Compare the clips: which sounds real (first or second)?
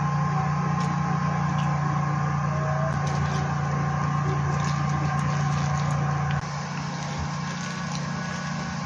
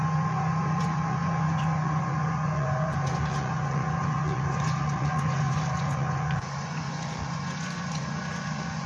first